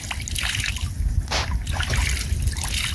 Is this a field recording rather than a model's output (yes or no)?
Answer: yes